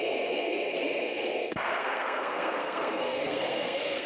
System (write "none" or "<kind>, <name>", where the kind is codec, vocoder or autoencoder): codec, SNAC